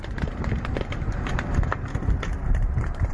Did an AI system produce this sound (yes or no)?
yes